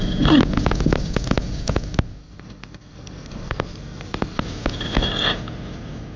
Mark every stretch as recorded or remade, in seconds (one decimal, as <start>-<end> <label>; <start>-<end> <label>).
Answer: 0.0-2.2 recorded; 2.2-4.4 remade; 4.4-6.2 recorded